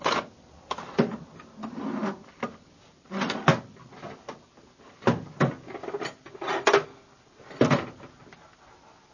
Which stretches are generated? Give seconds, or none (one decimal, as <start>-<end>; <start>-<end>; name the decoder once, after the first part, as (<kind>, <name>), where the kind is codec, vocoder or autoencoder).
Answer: none